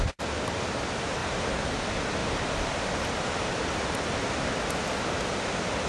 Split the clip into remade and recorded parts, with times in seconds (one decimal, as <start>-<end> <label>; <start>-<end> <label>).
0.0-1.2 recorded; 1.2-1.8 remade; 1.8-2.2 recorded; 2.2-4.3 remade; 4.3-5.9 recorded